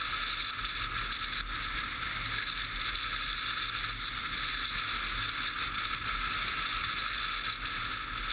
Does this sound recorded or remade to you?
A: recorded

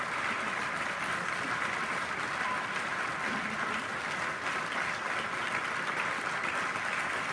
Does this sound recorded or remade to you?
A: recorded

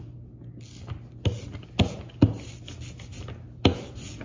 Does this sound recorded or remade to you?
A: recorded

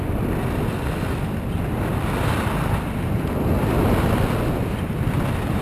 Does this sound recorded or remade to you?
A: recorded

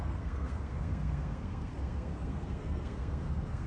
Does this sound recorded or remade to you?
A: remade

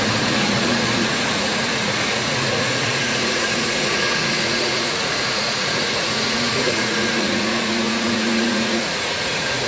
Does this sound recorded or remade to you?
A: remade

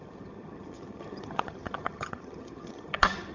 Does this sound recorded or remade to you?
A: remade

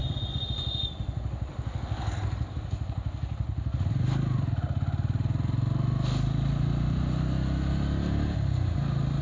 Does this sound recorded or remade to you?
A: recorded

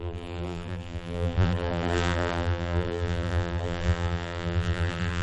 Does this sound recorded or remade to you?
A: remade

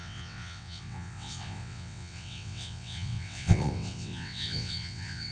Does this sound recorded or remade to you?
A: remade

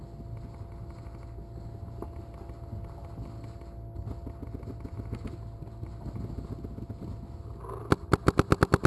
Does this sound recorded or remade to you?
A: recorded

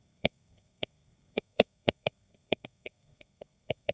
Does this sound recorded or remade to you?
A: remade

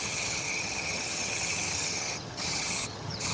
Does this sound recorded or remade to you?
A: remade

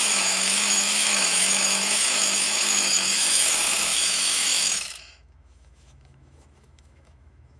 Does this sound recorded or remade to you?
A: remade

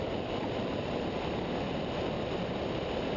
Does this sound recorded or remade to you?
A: recorded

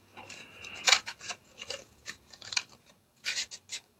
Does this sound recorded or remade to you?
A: remade